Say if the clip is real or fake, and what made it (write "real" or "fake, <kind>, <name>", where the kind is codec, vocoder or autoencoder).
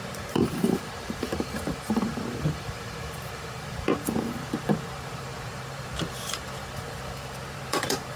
fake, vocoder, BigVGAN v2